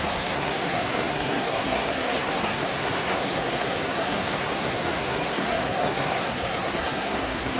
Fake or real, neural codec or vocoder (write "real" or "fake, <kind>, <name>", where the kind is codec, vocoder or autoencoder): fake, codec, SNAC